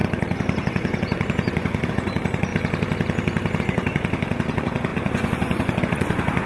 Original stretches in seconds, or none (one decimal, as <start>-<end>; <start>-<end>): 2.5-3.6